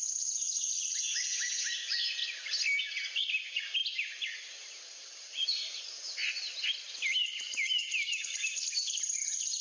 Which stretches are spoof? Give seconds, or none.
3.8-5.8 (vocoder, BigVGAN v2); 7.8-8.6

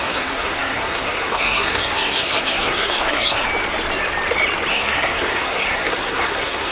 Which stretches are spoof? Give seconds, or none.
0.0-3.5 (codec, SNAC); 4.7-6.7

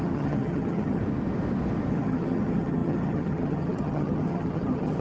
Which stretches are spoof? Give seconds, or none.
0.0-1.0 (vocoder, HiFi-GAN); 1.9-5.0

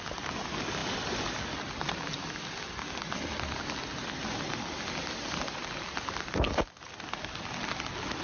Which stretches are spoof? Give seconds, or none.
none